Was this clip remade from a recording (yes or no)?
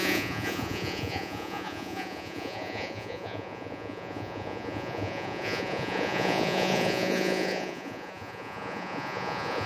yes